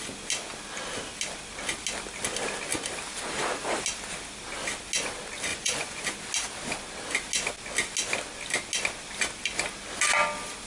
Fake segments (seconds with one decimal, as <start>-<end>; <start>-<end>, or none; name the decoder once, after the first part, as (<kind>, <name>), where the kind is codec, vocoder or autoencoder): 5.5-6.0 (vocoder, Vocos)